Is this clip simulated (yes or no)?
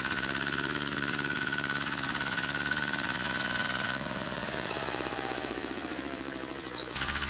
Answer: yes